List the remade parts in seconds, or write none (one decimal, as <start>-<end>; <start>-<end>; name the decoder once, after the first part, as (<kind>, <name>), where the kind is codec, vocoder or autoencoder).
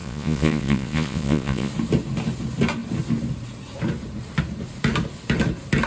0.0-1.7 (vocoder, Vocos)